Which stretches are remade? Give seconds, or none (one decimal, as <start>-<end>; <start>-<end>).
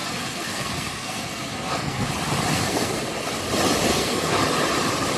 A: 0.0-2.1; 2.5-3.3; 3.9-4.4